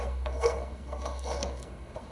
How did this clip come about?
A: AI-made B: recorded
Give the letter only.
A